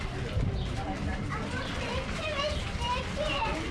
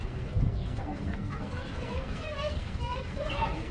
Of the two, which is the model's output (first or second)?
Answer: second